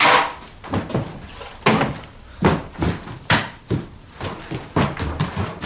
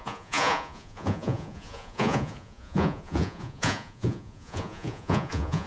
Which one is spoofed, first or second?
second